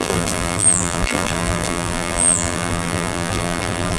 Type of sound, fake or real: fake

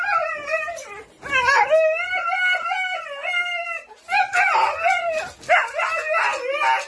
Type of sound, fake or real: real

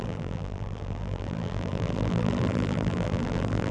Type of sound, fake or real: fake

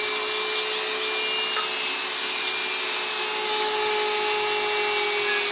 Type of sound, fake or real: real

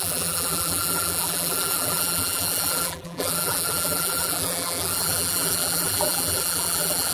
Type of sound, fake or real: fake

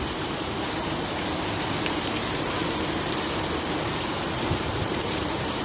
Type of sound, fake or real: fake